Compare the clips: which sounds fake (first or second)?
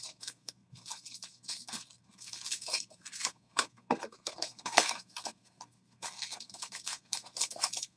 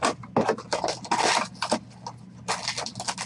first